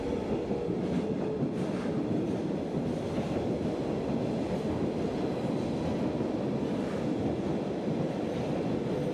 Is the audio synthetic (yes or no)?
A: no